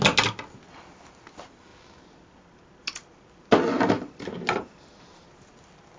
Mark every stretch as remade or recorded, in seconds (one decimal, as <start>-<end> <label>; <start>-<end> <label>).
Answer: 0.0-6.0 recorded